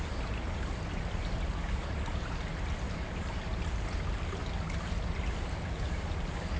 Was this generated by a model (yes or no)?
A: no